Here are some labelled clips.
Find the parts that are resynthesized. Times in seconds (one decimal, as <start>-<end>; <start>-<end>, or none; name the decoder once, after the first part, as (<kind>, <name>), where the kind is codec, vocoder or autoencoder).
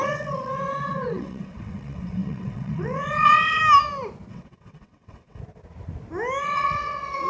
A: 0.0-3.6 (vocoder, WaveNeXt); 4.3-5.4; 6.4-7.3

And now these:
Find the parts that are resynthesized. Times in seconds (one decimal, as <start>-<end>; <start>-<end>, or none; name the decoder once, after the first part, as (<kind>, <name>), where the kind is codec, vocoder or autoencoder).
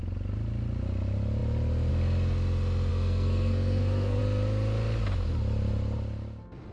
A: 2.9-4.2 (codec, SNAC)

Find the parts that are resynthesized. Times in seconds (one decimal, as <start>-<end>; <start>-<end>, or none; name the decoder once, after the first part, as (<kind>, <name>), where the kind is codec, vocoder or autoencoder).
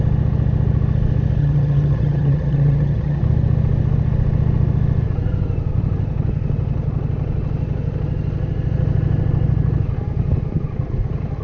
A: 1.4-3.2 (vocoder, HiFi-GAN)